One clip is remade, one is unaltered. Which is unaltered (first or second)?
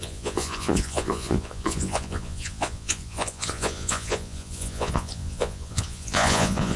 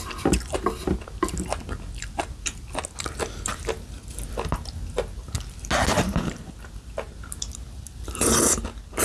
second